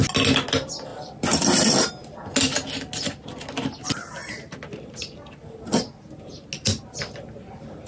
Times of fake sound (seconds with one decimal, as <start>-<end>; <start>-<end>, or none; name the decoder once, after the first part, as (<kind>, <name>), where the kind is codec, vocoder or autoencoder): 0.9-1.9 (vocoder, BigVGAN v2)